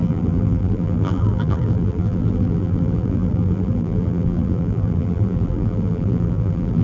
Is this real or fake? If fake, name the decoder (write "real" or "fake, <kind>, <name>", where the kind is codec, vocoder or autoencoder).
fake, vocoder, BigVGAN v2